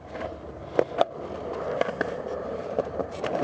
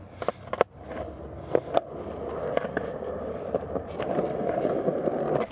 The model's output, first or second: first